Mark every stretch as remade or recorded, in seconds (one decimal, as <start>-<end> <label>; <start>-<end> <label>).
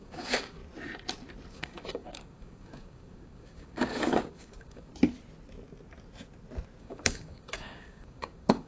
0.0-0.6 remade; 0.6-1.5 recorded; 1.5-4.9 remade; 4.9-6.8 recorded; 6.8-8.7 remade